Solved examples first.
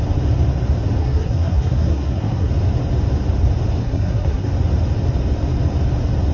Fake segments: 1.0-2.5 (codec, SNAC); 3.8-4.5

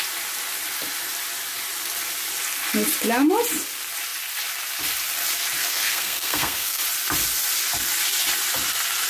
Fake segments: 5.6-6.8 (codec, SNAC)

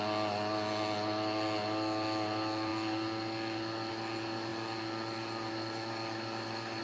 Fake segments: none

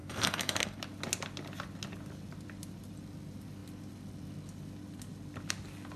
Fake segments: 0.0-0.8 (codec, SNAC)

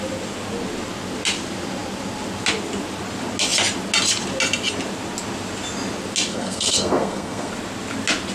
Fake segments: 6.3-7.5 (codec, SNAC)

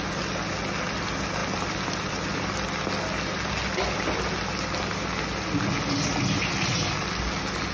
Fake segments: none

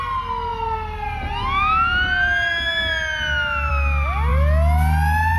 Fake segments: none